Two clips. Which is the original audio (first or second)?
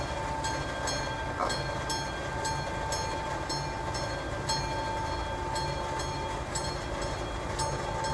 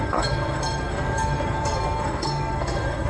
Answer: first